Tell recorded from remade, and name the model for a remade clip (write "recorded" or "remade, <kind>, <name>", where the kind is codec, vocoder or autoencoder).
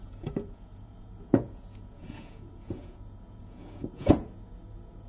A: remade, vocoder, Vocos